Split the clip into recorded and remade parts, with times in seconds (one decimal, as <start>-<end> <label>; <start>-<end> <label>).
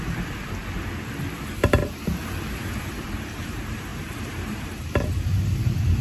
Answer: 0.0-0.6 remade; 0.6-1.5 recorded; 1.5-6.0 remade